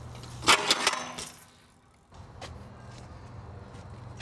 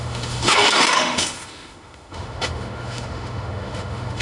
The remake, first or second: second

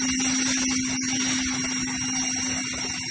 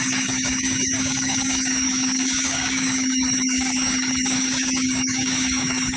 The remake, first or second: second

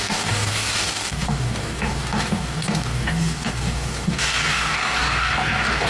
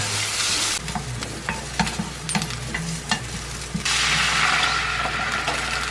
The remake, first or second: first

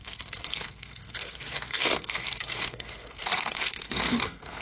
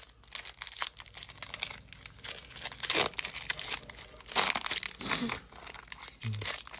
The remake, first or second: first